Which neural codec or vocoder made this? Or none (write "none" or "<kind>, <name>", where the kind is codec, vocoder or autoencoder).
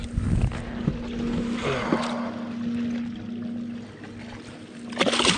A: none